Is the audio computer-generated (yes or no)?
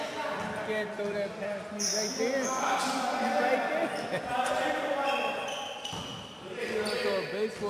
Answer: no